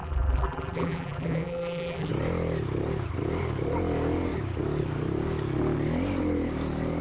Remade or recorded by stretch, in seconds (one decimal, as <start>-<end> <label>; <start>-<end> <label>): 0.0-2.1 remade; 2.1-7.0 recorded